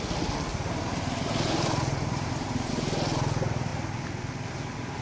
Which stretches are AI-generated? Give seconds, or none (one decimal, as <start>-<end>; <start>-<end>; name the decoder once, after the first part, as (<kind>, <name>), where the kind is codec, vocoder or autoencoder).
0.5-2.7 (vocoder, BigVGAN v2)